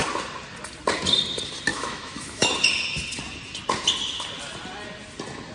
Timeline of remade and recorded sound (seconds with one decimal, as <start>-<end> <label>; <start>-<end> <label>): 0.0-1.7 recorded; 1.7-2.5 remade; 2.5-5.5 recorded